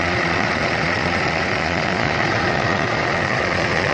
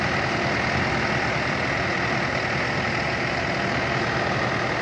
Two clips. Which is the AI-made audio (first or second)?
first